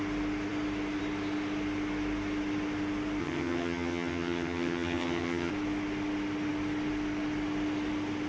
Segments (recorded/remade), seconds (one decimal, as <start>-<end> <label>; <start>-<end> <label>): 0.0-3.2 recorded; 3.2-5.5 remade; 5.5-8.3 recorded